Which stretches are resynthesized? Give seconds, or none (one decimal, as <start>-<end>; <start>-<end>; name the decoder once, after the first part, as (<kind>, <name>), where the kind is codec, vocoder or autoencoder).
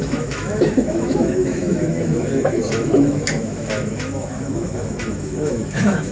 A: 0.0-6.1 (autoencoder, DAC-VAE)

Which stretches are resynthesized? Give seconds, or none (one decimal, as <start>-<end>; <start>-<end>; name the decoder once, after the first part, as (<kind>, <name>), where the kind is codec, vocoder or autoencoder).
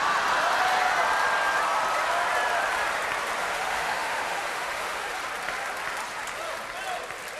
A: 3.4-5.1 (autoencoder, DAC-VAE)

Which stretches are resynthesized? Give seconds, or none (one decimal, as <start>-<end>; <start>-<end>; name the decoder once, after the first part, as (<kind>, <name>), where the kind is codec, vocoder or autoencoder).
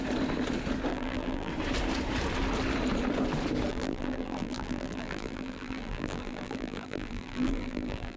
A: 0.9-1.5 (vocoder, BigVGAN v2); 3.7-8.2